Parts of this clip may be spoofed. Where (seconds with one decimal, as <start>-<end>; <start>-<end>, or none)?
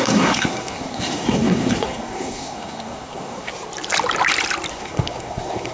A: 0.0-3.5; 4.7-5.7